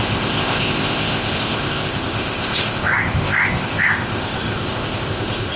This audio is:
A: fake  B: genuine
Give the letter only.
A